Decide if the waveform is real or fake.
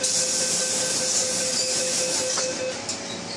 real